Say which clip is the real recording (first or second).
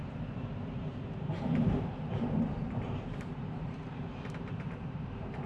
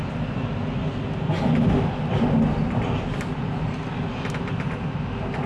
second